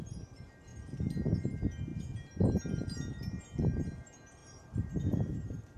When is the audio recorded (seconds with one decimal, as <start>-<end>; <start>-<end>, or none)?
0.0-4.4